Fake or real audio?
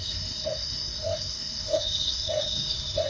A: fake